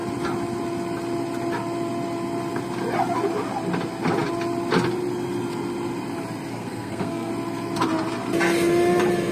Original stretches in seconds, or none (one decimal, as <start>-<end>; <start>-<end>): 0.0-6.5; 7.3-9.3

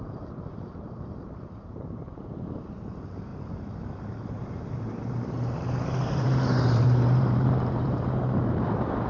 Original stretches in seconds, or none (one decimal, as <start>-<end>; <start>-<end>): none

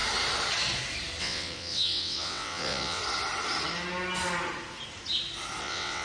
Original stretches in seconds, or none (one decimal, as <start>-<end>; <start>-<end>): 0.0-1.2; 3.0-5.6

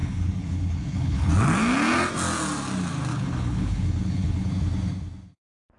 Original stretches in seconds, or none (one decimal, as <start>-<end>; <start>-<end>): 1.3-3.1; 4.5-5.8

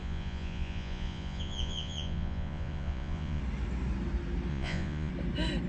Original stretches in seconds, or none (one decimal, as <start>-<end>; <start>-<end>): 3.4-4.5; 5.1-5.7